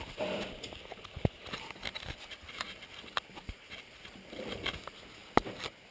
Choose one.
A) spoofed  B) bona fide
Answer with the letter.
B